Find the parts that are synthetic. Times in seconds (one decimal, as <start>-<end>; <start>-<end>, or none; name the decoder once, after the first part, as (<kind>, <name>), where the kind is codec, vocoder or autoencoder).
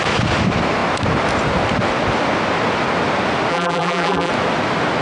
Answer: 3.5-4.3 (vocoder, BigVGAN v2)